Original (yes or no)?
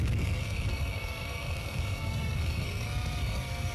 no